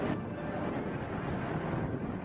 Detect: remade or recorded recorded